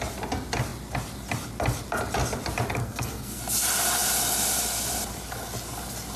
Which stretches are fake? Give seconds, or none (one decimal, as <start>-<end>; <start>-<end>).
2.8-3.4